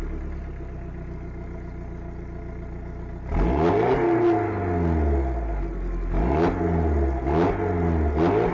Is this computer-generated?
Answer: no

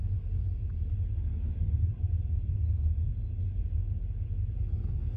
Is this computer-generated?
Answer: no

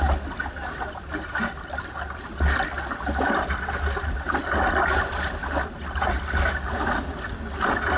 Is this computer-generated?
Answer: no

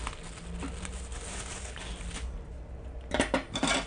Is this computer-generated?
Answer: no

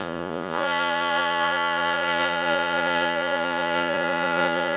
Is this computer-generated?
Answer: yes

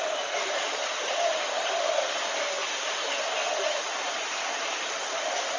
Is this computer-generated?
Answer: no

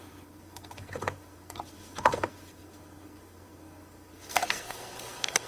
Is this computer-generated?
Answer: yes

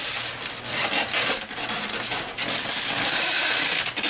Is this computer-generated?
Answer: no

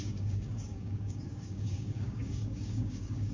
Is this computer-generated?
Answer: yes